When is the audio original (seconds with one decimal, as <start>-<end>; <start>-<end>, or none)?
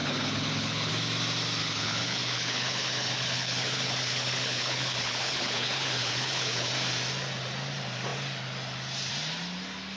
0.9-1.6; 6.7-10.0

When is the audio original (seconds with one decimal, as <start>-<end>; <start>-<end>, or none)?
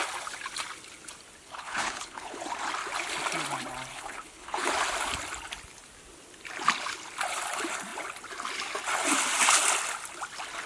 0.0-1.4; 2.4-3.9; 4.7-10.7